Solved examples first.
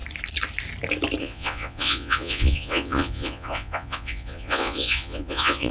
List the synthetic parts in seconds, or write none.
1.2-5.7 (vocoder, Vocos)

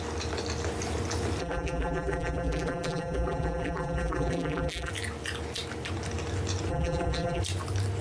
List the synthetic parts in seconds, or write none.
1.4-4.9 (vocoder, BigVGAN v2); 6.7-7.4

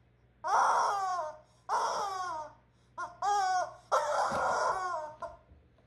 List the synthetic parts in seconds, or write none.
none

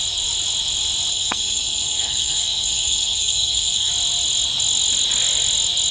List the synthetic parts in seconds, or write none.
1.1-3.9 (codec, SNAC)

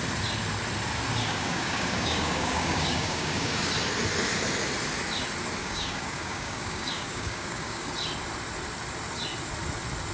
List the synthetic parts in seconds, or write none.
1.2-3.7 (codec, DAC); 5.6-7.9

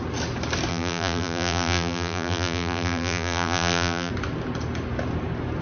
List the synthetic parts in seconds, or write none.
0.7-4.1 (vocoder, BigVGAN v2)

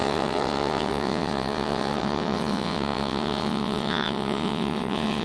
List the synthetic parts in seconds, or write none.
0.0-5.2 (vocoder, WaveNeXt)

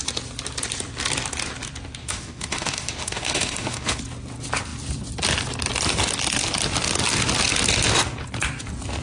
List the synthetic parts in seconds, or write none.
2.0-4.0 (autoencoder, DAC-VAE)